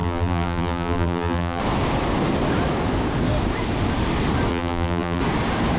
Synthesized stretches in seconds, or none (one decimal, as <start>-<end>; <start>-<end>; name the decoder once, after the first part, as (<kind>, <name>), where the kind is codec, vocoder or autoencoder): 0.0-1.6 (vocoder, BigVGAN v2); 4.5-5.2